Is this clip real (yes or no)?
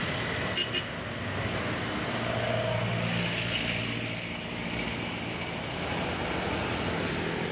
yes